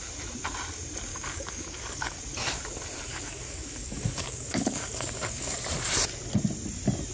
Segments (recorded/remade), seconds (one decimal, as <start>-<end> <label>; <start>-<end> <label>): 0.0-1.1 recorded; 1.1-2.2 remade; 2.2-3.1 recorded; 3.1-5.6 remade; 5.6-7.1 recorded